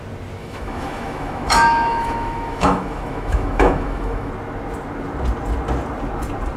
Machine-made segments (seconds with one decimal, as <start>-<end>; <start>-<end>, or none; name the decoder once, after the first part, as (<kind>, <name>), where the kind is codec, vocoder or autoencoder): 0.4-4.3 (autoencoder, DAC-VAE)